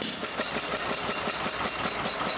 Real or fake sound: real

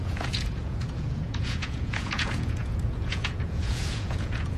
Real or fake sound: fake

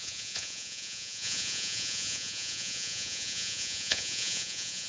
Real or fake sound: fake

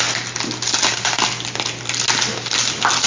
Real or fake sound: real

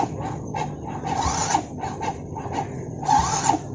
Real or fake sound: real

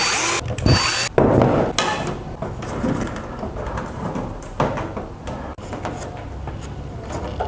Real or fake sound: real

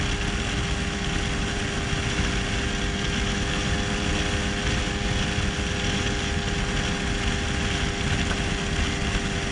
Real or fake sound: real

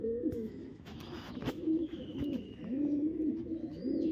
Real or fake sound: fake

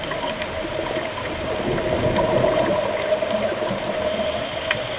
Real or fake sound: real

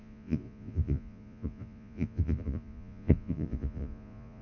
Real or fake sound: fake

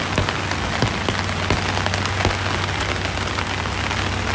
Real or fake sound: real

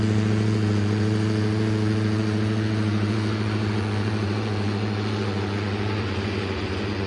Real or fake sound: fake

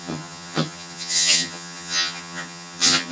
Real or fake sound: fake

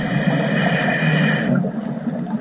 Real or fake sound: real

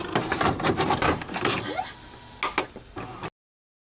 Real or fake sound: real